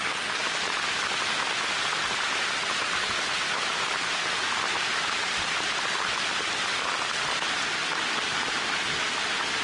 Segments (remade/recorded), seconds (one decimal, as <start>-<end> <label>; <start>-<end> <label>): 0.0-0.4 recorded; 0.4-1.0 remade; 1.0-3.3 recorded; 3.3-5.2 remade; 5.2-9.6 recorded